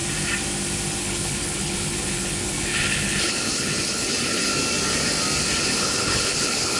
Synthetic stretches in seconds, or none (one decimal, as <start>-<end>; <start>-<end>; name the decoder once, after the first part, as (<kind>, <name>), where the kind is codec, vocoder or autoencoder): 1.0-4.5 (codec, HILCodec); 5.6-6.8